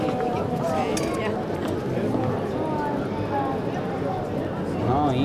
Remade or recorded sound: recorded